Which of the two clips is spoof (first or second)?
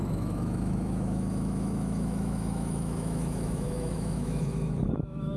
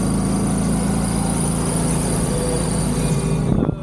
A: first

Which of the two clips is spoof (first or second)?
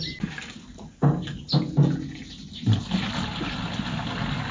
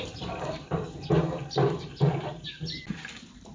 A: second